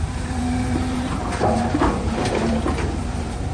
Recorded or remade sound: remade